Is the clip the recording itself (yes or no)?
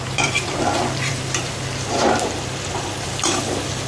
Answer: no